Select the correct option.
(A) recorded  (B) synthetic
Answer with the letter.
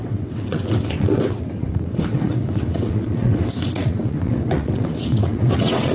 B